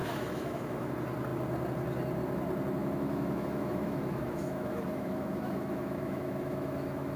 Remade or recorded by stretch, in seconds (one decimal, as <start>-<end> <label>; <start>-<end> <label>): 0.0-0.9 remade; 0.9-2.8 recorded; 2.8-7.2 remade

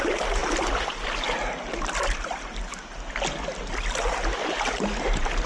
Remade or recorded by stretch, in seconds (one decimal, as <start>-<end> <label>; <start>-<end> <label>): 0.0-5.5 recorded

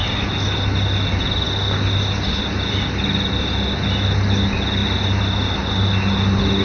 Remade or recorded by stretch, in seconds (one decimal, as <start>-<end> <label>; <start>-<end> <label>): 0.0-6.6 recorded

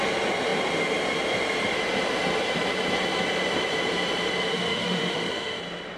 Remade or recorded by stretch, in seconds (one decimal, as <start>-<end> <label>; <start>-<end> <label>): 0.0-4.5 recorded; 4.5-5.6 remade; 5.6-6.0 recorded